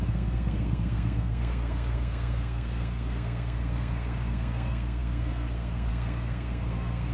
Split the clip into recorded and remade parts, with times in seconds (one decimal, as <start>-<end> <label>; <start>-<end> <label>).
0.0-7.1 remade